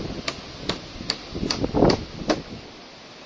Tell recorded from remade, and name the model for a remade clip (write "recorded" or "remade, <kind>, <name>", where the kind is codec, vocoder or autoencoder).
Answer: recorded